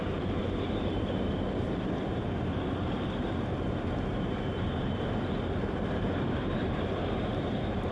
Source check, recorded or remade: remade